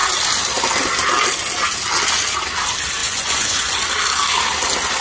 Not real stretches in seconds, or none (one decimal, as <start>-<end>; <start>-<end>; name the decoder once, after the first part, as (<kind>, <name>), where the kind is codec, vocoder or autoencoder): 3.0-3.8 (vocoder, Vocos)